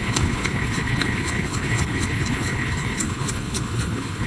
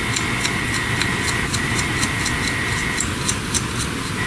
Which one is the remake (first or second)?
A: first